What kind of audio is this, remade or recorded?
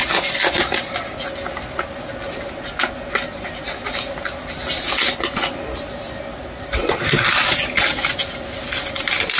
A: recorded